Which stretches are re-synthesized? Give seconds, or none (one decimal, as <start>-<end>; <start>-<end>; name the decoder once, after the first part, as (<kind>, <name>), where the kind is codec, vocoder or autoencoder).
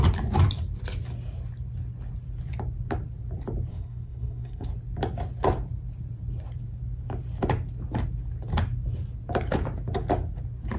3.7-4.7 (codec, SNAC)